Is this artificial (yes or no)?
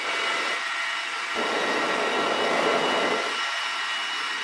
no